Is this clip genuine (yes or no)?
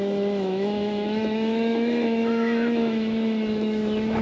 no